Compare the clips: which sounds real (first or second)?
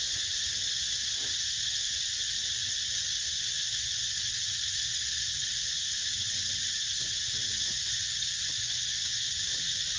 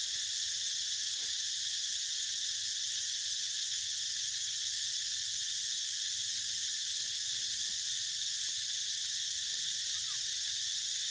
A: second